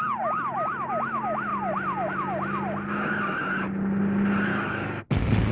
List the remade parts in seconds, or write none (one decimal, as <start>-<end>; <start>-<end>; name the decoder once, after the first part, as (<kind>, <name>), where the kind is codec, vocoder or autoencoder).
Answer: 4.5-5.0 (codec, DAC)